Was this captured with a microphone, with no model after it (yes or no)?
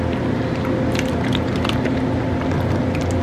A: yes